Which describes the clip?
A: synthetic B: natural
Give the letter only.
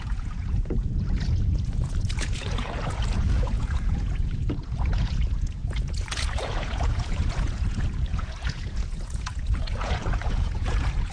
A